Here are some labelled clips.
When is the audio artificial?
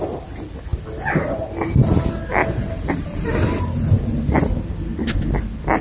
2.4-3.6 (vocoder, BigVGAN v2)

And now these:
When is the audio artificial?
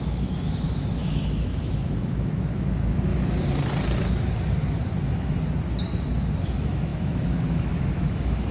0.0-3.1 (autoencoder, DAC-VAE); 6.4-8.5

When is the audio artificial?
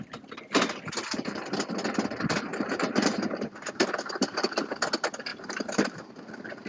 2.5-4.7 (vocoder, BigVGAN v2); 5.3-6.1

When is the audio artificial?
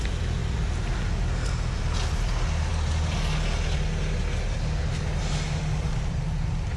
none